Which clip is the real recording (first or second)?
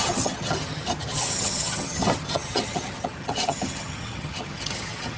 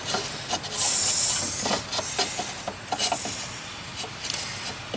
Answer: second